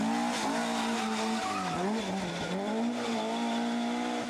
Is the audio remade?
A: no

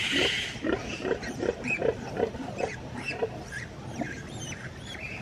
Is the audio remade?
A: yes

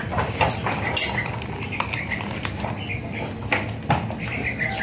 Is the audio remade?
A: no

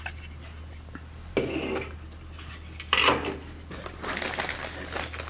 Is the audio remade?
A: no